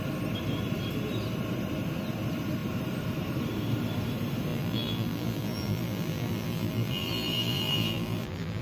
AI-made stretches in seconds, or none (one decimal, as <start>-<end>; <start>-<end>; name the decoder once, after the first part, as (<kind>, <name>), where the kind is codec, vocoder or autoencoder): 4.5-8.6 (vocoder, BigVGAN v2)